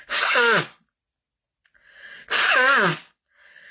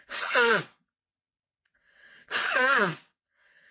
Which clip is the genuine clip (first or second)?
first